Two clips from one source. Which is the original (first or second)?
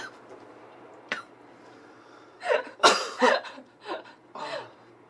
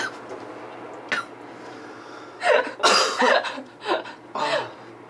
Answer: second